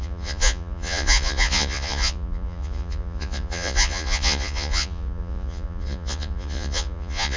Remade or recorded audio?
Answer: remade